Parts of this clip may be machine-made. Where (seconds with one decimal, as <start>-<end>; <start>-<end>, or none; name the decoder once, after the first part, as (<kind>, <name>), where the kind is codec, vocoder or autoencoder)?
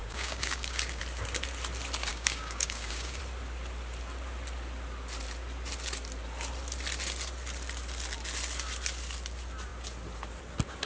0.0-1.0 (codec, DAC); 2.1-3.2